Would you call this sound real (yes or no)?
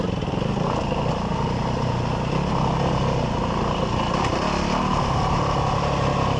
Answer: yes